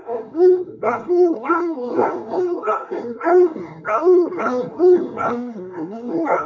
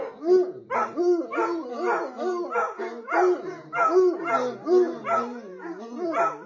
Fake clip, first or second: first